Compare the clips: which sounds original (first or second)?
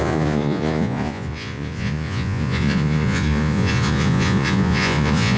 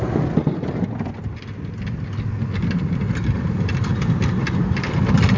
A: second